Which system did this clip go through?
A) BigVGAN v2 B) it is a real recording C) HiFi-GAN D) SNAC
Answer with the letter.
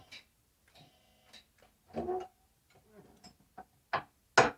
B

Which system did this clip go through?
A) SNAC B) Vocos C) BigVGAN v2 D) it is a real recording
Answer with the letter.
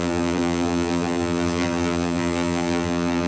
C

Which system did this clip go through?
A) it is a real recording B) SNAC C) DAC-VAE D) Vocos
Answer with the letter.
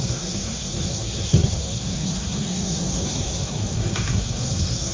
B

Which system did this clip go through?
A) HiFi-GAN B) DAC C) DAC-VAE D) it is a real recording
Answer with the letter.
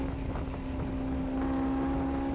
D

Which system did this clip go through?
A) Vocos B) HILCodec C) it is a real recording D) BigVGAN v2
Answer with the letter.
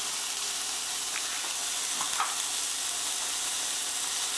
C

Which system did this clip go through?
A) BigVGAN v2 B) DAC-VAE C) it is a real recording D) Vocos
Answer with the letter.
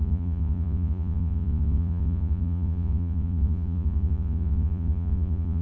D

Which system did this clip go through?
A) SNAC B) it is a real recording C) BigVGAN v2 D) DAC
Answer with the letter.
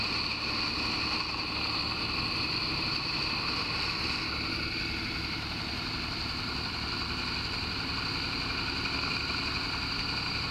B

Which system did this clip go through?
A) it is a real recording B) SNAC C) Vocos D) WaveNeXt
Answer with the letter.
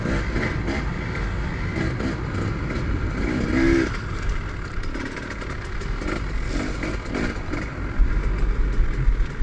A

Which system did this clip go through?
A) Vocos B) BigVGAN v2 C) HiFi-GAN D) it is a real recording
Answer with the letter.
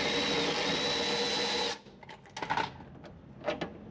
D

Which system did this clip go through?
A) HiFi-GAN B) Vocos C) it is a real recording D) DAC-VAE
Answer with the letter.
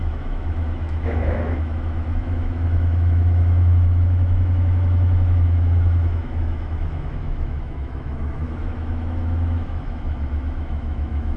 D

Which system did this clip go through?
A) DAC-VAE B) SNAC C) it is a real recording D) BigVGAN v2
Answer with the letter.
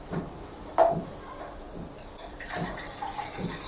D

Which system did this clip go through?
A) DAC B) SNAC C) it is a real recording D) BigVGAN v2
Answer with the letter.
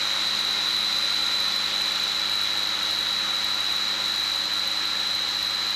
C